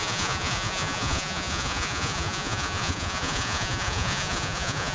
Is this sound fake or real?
fake